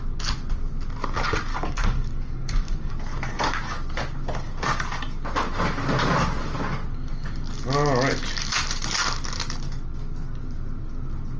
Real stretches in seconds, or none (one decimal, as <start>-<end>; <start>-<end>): 0.0-1.5; 2.9-11.4